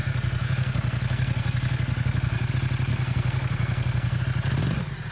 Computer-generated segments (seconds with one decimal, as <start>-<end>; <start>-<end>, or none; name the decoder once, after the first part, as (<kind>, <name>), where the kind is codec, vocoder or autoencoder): 0.0-2.5 (codec, SNAC); 2.9-4.2

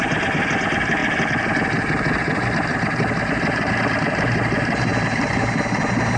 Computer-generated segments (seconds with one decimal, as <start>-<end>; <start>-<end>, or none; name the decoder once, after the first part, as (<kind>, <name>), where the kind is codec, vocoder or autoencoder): none